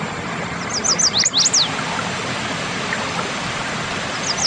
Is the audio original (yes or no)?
yes